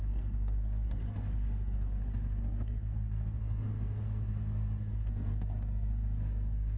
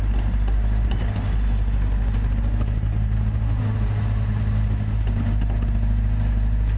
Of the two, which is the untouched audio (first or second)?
second